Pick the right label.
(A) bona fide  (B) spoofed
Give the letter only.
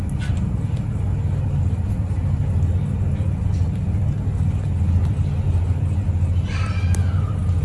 A